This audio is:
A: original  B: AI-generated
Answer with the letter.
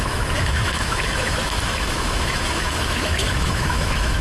B